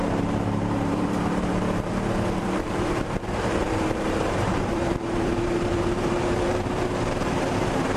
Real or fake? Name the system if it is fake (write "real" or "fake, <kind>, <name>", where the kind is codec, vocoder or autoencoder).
fake, vocoder, BigVGAN v2